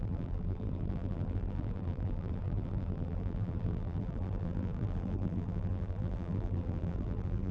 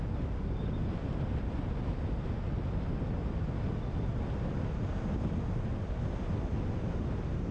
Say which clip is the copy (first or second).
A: first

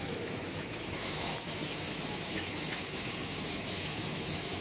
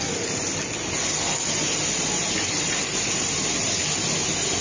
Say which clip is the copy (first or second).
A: first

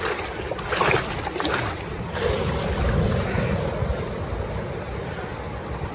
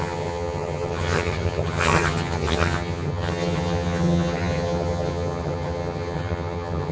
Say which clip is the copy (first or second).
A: second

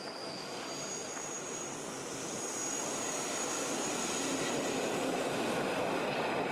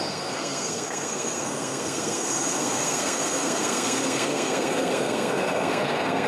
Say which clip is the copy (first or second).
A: second